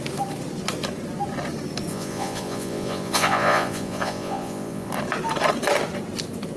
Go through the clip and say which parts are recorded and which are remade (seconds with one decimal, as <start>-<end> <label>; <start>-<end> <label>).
0.0-1.9 recorded; 1.9-4.9 remade; 4.9-6.6 recorded